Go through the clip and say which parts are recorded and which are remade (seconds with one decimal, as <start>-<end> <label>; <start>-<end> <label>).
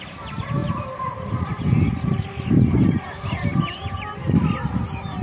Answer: 0.0-5.2 recorded